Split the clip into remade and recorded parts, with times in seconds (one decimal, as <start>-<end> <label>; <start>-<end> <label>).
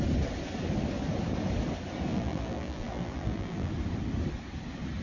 0.0-2.1 recorded; 2.1-3.7 remade; 3.7-5.0 recorded